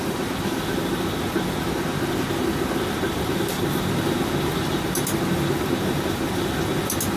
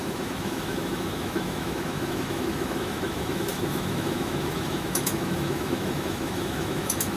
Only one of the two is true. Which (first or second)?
first